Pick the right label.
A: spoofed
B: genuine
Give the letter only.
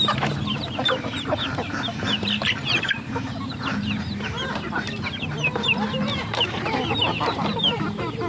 A